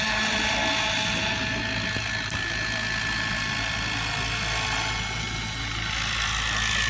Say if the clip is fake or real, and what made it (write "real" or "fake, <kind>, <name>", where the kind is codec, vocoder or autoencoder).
real